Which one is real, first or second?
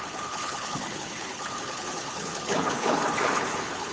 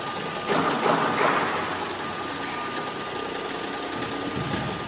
second